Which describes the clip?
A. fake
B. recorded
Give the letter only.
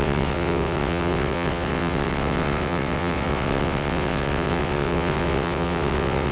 A